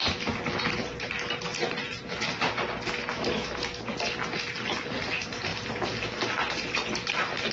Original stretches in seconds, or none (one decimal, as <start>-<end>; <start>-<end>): 0.0-3.1; 3.8-7.5